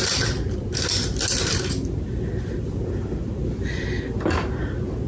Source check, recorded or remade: recorded